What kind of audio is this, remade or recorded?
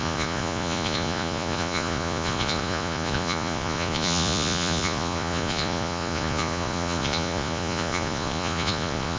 remade